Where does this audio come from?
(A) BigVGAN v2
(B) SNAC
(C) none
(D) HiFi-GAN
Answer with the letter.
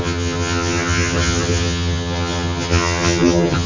D